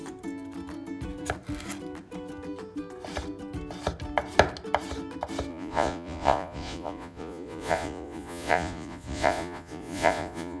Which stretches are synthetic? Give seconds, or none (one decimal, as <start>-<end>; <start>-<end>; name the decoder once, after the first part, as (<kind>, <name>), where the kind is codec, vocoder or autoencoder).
5.5-10.6 (vocoder, Vocos)